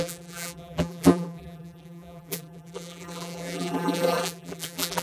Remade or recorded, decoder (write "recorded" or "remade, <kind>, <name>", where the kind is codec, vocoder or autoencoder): remade, vocoder, BigVGAN v2